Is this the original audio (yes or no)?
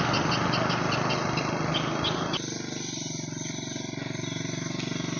yes